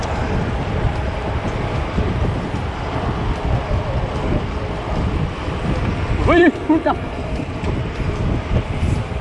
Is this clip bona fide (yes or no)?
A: no